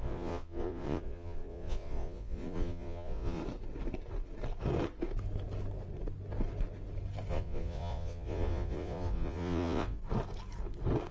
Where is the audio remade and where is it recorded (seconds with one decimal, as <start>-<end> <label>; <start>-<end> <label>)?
0.0-3.4 remade; 3.4-7.3 recorded; 7.3-10.0 remade; 10.0-11.1 recorded